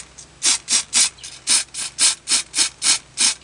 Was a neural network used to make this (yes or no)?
no